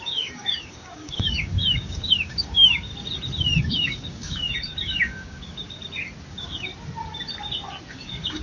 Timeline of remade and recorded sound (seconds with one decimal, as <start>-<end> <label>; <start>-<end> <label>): 0.0-2.9 remade; 2.9-3.6 recorded; 3.6-5.8 remade; 5.8-6.3 recorded; 6.3-6.7 remade; 6.7-7.9 recorded; 7.9-8.4 remade